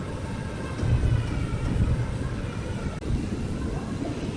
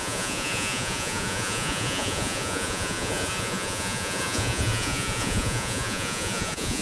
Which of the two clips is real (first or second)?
first